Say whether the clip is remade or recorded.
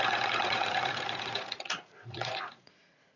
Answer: remade